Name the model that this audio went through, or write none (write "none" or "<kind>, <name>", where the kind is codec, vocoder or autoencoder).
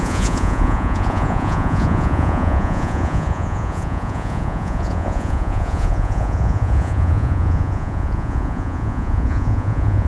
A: vocoder, Vocos